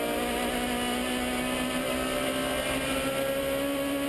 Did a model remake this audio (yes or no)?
no